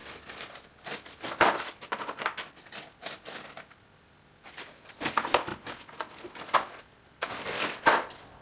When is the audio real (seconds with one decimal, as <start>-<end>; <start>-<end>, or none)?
0.0-8.4